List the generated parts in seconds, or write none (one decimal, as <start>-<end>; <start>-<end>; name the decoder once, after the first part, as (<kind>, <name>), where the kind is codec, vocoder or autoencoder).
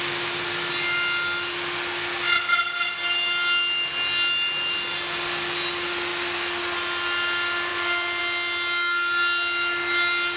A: none